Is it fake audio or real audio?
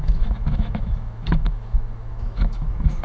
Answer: fake